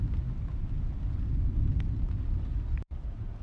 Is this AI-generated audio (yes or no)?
no